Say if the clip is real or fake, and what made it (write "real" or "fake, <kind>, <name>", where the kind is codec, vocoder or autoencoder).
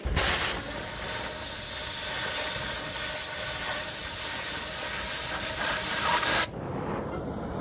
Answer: real